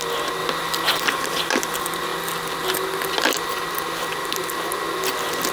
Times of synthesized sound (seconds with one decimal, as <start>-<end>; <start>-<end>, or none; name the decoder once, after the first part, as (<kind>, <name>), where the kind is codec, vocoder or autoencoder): none